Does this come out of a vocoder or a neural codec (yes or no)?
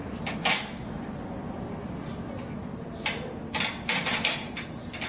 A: no